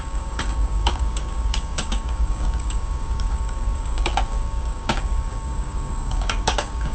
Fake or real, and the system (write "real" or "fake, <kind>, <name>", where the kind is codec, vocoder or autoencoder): fake, codec, DAC